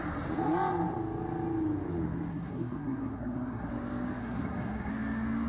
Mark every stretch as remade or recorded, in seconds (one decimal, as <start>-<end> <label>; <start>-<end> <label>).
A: 0.0-2.3 recorded; 2.3-3.7 remade; 3.7-4.2 recorded; 4.2-4.9 remade; 4.9-5.5 recorded